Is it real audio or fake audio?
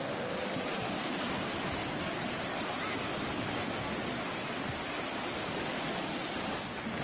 real